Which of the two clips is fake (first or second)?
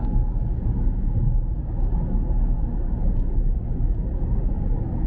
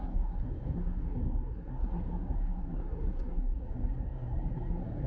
second